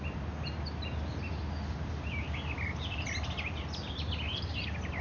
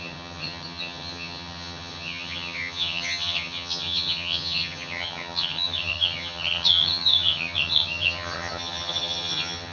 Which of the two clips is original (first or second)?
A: first